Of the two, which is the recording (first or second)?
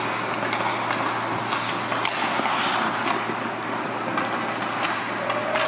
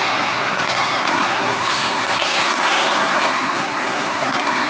first